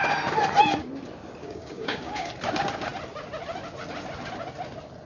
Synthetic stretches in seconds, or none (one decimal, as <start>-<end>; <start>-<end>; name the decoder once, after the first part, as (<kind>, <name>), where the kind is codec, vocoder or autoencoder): 1.4-2.3 (codec, DAC)